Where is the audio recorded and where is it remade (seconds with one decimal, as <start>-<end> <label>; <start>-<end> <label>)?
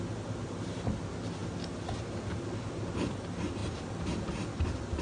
0.0-3.6 recorded; 3.6-4.3 remade; 4.3-5.0 recorded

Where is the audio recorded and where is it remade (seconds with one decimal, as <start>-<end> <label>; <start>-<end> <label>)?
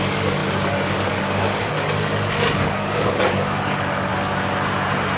0.0-4.1 remade; 4.1-5.2 recorded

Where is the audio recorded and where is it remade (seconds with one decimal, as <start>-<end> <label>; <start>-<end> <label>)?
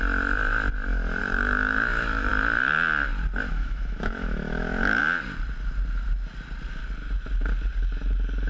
0.0-1.2 recorded; 1.2-2.3 remade; 2.3-3.5 recorded; 3.5-5.0 remade; 5.0-8.5 recorded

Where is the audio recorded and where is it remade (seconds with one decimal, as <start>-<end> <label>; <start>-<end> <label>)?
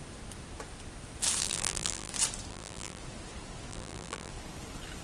0.0-1.4 recorded; 1.4-2.1 remade; 2.1-2.5 recorded; 2.5-3.0 remade; 3.0-3.7 recorded; 3.7-4.3 remade; 4.3-5.0 recorded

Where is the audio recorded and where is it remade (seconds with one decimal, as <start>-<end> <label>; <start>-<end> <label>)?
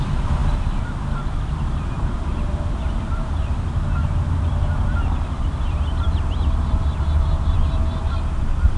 0.0-3.5 remade; 3.5-4.8 recorded; 4.8-8.8 remade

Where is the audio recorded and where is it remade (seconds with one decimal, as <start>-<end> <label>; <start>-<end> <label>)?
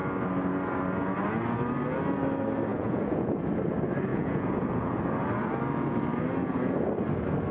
0.0-2.7 recorded; 2.7-3.4 remade; 3.4-4.1 recorded; 4.1-5.0 remade; 5.0-7.5 recorded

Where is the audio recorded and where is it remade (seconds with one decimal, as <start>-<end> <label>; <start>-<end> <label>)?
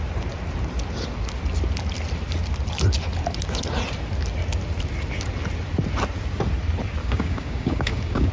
0.0-7.0 recorded; 7.0-8.3 remade